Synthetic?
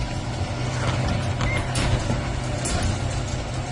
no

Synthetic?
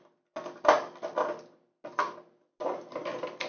no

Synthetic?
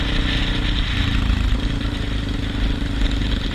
no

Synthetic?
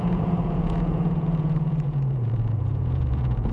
yes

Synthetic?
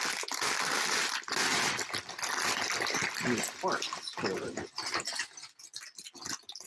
no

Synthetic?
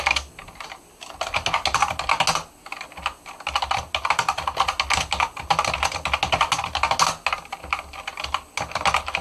no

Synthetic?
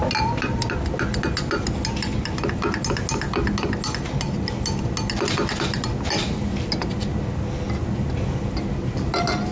no